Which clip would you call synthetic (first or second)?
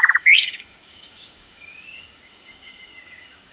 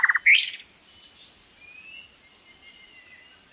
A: first